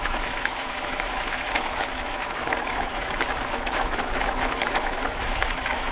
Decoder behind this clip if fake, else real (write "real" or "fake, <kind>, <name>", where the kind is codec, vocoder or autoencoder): fake, autoencoder, DAC-VAE